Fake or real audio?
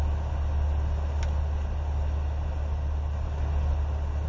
real